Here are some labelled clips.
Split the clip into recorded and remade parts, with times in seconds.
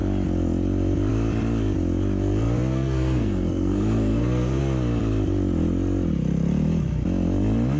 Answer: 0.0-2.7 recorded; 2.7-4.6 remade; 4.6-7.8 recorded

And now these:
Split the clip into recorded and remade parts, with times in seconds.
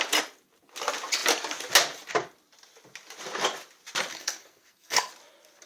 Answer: 0.0-4.1 recorded; 4.1-5.1 remade; 5.1-5.7 recorded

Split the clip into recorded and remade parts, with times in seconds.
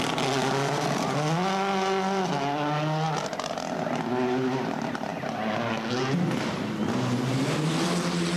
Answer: 0.0-8.4 recorded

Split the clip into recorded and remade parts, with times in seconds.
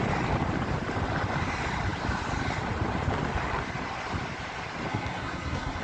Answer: 0.0-4.9 recorded; 4.9-5.8 remade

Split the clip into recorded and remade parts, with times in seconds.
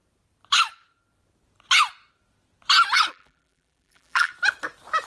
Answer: 0.0-3.1 recorded; 3.1-4.3 remade; 4.3-5.1 recorded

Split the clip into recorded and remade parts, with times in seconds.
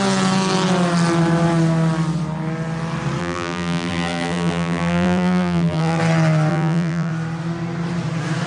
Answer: 0.0-3.2 recorded; 3.2-6.0 remade; 6.0-6.5 recorded; 6.5-7.1 remade; 7.1-8.5 recorded